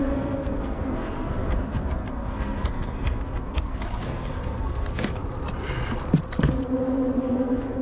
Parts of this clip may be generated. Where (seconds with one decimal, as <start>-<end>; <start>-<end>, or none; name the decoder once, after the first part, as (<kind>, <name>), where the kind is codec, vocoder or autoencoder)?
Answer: 0.0-5.2 (codec, SNAC); 7.2-7.8